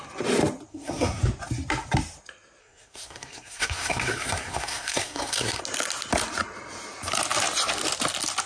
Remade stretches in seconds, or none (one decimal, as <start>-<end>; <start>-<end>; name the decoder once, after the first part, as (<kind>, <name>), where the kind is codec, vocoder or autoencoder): 0.7-1.2 (codec, SNAC); 2.6-5.6